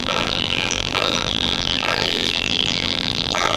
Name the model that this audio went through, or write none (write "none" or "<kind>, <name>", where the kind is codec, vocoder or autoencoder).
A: vocoder, BigVGAN v2